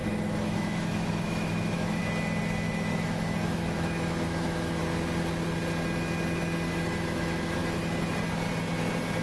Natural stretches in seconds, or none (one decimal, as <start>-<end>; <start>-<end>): 2.0-2.7; 4.8-6.7; 7.6-9.2